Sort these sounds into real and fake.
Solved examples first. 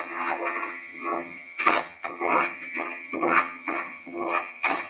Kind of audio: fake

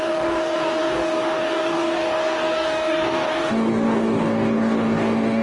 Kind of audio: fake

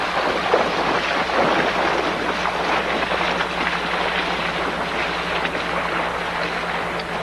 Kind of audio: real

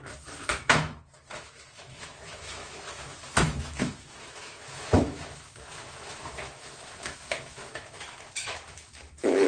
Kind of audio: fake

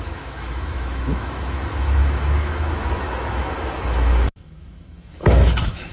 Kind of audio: fake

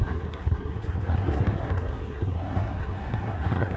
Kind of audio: fake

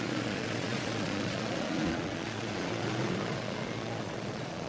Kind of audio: fake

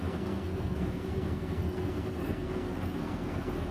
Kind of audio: fake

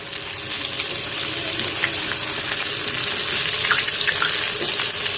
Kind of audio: real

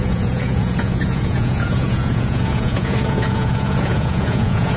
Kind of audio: fake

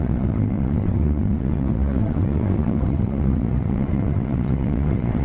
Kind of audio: fake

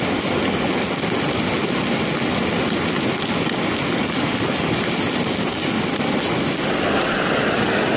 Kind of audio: real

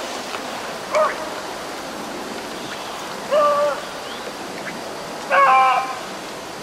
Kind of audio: real